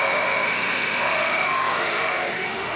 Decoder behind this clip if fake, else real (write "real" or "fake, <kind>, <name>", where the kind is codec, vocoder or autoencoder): fake, autoencoder, DAC-VAE